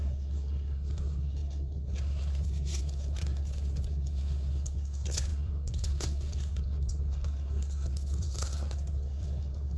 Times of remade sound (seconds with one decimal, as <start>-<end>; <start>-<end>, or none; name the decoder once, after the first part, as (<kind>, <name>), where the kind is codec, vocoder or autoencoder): 0.0-9.8 (codec, SNAC)